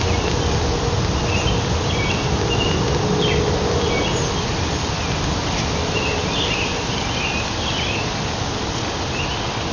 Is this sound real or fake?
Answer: real